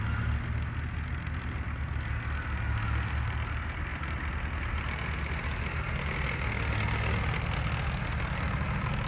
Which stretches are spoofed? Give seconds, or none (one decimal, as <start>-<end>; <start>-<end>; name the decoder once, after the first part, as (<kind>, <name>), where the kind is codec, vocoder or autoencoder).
none